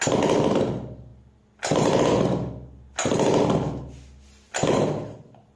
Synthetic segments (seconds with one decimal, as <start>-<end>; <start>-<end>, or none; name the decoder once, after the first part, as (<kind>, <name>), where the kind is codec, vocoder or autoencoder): none